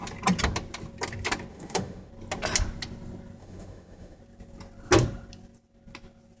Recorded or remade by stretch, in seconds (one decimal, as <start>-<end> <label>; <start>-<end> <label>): 0.0-1.5 recorded; 1.5-2.1 remade; 2.1-3.4 recorded; 3.4-4.2 remade; 4.2-6.4 recorded